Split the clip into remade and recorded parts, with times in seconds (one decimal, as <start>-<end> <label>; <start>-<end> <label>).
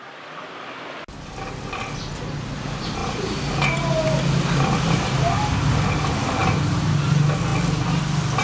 0.0-8.4 recorded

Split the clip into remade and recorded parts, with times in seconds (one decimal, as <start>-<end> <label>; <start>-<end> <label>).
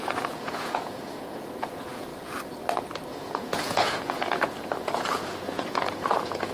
0.0-2.1 remade; 2.1-3.1 recorded; 3.1-6.5 remade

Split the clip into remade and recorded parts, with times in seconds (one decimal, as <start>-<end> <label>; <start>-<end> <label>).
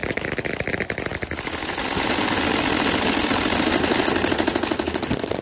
0.0-5.4 recorded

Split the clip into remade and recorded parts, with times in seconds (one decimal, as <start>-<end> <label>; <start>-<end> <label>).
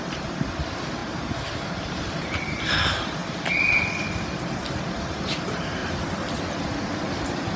0.0-3.2 remade; 3.2-4.9 recorded; 4.9-5.8 remade; 5.8-7.1 recorded; 7.1-7.6 remade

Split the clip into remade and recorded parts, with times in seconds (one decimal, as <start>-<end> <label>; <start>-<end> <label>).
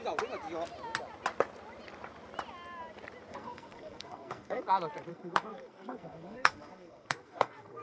0.0-3.3 recorded; 3.3-4.6 remade; 4.6-5.1 recorded; 5.1-7.8 remade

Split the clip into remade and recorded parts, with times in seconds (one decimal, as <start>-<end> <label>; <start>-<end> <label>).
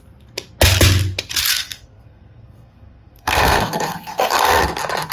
0.0-1.5 recorded; 1.5-4.6 remade; 4.6-5.1 recorded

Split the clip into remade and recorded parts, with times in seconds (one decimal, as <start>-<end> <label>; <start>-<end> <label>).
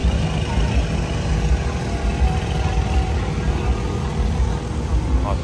0.0-5.4 recorded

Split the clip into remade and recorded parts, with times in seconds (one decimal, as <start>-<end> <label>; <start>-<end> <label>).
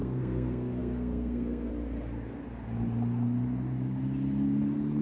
0.0-1.7 remade; 1.7-5.0 recorded